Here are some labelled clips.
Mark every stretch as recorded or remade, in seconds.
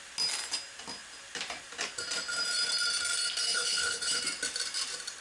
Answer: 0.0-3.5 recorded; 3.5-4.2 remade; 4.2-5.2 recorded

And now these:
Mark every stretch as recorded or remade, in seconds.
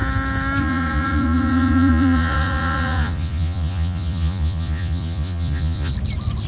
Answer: 0.0-0.6 recorded; 0.6-5.9 remade; 5.9-6.5 recorded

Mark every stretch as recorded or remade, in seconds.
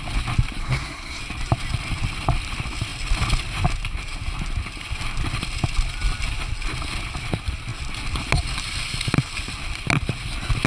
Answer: 0.0-0.6 recorded; 0.6-1.2 remade; 1.2-10.7 recorded